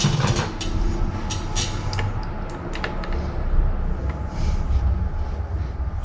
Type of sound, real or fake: real